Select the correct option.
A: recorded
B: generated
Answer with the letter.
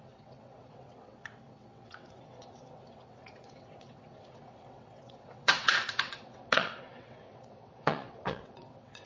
B